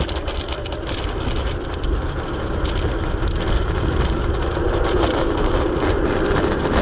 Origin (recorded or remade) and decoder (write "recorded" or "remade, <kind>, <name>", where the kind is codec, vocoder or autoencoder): recorded